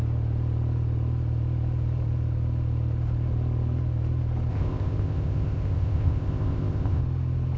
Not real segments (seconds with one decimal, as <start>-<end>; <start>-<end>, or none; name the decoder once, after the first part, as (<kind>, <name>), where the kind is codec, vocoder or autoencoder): 4.5-7.0 (codec, ZipCodec)